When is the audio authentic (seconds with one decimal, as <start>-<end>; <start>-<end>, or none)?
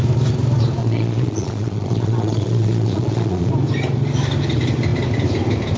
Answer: 0.0-0.8; 3.5-5.8